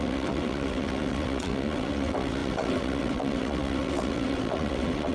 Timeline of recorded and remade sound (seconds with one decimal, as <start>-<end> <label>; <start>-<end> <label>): 0.0-5.1 remade